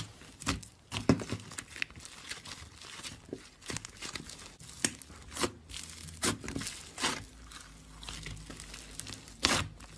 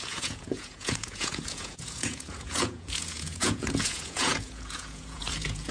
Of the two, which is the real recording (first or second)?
first